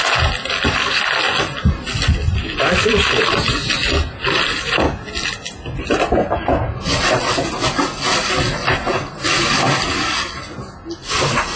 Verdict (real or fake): real